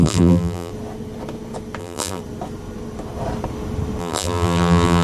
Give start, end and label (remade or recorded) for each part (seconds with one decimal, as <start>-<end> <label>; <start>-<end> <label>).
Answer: 0.0-0.7 remade; 0.7-1.8 recorded; 1.8-2.2 remade; 2.2-4.0 recorded; 4.0-5.0 remade